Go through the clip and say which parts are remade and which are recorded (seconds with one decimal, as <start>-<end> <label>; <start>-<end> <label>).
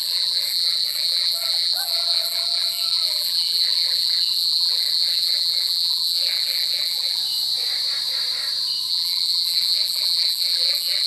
0.0-7.2 remade; 7.2-8.9 recorded; 8.9-11.1 remade